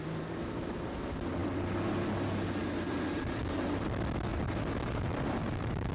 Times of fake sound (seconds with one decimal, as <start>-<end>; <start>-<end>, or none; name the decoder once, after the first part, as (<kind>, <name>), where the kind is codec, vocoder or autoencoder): 4.3-5.9 (vocoder, BigVGAN v2)